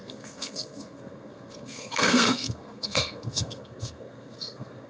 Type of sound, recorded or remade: remade